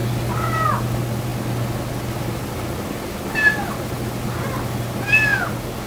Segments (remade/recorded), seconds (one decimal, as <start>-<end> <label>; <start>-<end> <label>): 0.0-5.9 recorded